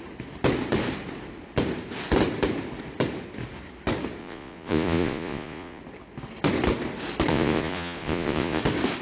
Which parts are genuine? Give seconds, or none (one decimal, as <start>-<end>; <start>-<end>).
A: 0.0-4.2; 5.8-7.3; 8.6-9.0